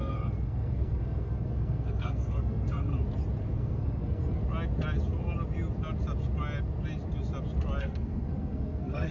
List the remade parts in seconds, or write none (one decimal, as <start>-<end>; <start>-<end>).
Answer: 0.0-2.9; 3.4-4.4; 7.8-9.1